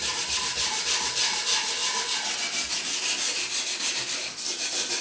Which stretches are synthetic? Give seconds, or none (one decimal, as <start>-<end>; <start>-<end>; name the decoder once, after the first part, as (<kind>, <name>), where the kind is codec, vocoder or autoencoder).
none